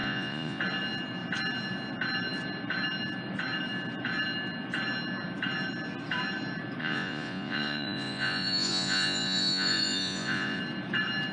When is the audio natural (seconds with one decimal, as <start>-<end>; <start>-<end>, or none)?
0.6-6.8; 10.6-11.3